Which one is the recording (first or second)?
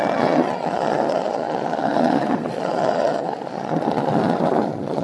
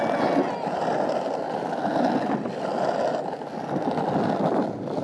second